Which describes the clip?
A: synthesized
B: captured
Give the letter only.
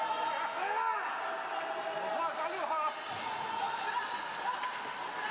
B